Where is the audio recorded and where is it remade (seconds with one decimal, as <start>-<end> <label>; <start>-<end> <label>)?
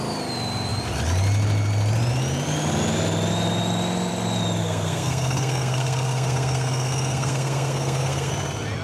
0.0-4.6 recorded; 4.6-8.3 remade; 8.3-8.8 recorded